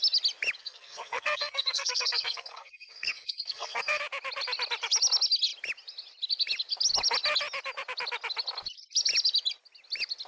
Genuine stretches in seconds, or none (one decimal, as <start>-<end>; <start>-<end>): 0.0-0.6; 4.0-10.3